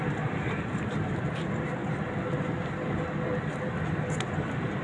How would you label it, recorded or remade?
recorded